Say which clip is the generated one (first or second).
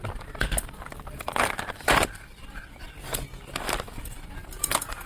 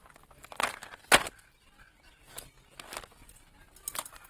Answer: first